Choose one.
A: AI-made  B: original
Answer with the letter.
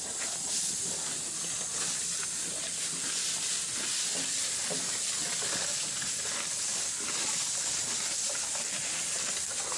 B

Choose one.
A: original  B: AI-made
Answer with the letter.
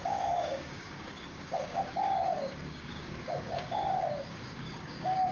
B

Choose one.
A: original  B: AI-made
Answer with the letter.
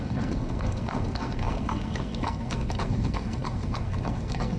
B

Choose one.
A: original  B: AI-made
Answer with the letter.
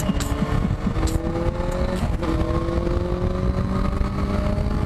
A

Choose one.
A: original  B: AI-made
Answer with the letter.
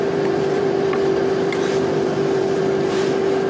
B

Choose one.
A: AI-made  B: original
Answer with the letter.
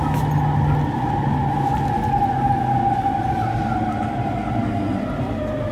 B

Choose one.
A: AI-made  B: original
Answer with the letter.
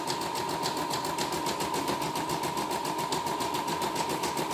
B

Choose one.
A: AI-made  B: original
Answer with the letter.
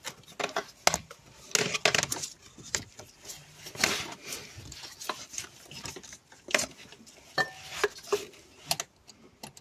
B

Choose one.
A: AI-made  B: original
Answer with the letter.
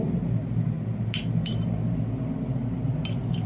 B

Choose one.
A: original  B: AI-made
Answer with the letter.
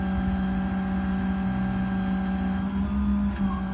A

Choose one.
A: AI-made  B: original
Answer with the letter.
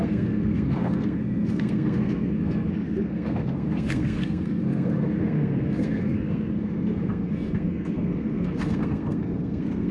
A